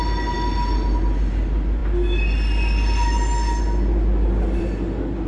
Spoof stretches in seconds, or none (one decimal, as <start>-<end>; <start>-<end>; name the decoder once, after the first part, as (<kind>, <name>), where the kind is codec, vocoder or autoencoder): none